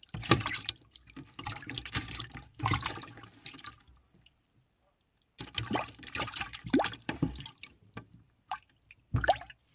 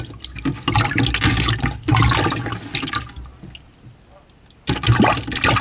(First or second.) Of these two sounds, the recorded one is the second